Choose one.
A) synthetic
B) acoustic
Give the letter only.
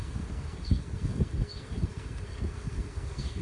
A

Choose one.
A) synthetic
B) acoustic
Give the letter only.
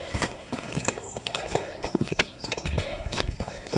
A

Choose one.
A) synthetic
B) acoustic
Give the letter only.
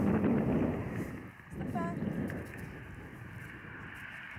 B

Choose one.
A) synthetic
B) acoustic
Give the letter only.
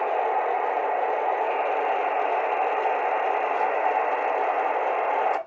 B